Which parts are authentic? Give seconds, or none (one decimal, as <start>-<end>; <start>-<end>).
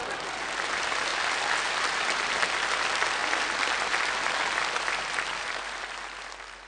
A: 0.0-6.7